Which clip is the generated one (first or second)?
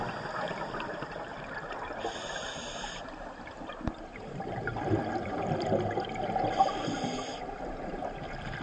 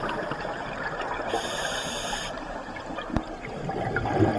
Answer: first